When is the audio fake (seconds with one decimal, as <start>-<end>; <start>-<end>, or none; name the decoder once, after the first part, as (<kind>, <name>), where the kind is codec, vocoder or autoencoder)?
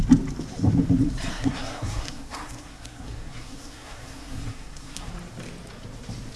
1.3-5.1 (codec, SNAC)